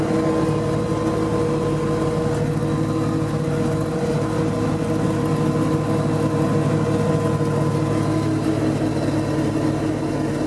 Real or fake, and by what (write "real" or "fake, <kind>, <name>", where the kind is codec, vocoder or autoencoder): real